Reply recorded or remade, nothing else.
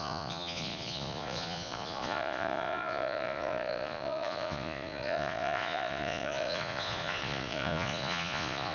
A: remade